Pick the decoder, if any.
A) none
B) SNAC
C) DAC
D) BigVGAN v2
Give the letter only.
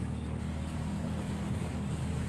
C